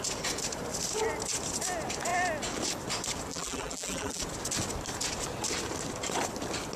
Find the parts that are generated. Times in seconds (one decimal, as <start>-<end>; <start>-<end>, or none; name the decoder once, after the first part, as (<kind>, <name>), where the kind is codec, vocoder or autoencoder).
3.3-4.2 (vocoder, BigVGAN v2)